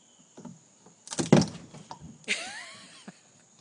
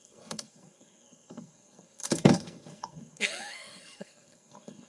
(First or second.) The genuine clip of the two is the first